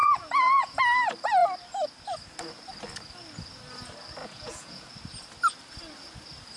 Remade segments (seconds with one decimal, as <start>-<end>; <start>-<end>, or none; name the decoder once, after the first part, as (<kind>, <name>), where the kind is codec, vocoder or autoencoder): 0.0-0.8 (vocoder, Vocos); 4.2-4.9